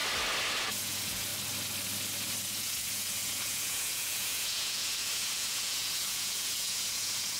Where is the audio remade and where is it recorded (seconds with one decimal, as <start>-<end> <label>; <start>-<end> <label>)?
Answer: 0.0-0.6 recorded; 0.6-1.3 remade; 1.3-2.4 recorded; 2.4-7.4 remade